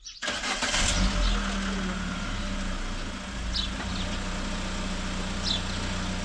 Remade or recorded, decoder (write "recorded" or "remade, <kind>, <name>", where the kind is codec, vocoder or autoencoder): recorded